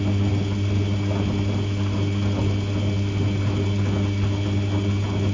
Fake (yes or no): no